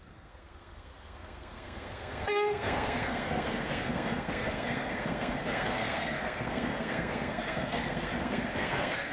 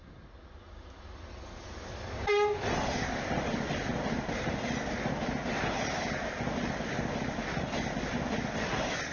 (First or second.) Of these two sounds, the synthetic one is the first